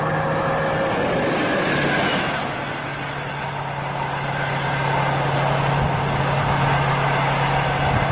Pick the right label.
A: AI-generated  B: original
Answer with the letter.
B